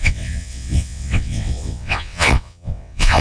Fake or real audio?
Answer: fake